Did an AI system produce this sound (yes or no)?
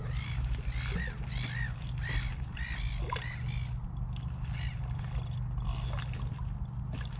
no